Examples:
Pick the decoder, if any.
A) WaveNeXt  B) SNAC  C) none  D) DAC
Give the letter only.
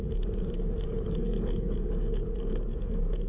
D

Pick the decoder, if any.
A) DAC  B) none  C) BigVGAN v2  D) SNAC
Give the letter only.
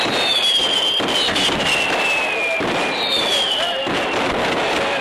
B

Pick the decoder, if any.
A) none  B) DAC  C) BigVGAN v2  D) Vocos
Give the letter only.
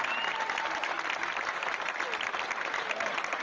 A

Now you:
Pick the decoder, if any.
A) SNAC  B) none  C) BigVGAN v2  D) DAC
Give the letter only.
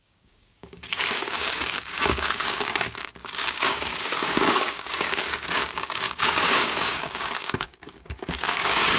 D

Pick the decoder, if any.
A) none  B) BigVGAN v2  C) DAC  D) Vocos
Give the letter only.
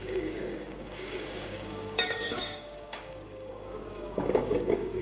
C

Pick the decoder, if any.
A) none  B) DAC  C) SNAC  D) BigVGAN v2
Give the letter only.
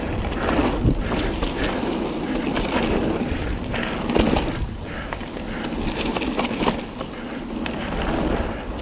A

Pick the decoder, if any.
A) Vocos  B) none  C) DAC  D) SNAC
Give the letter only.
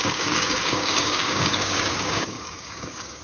C